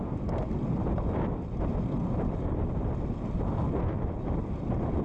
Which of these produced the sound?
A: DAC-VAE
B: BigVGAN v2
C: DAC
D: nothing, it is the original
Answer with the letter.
D